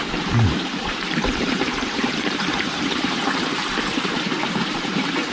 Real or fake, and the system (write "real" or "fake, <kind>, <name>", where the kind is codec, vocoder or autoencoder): fake, vocoder, BigVGAN v2